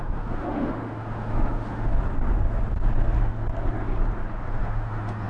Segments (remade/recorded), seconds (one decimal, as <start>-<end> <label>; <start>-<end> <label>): 0.0-1.9 remade; 1.9-4.5 recorded; 4.5-5.3 remade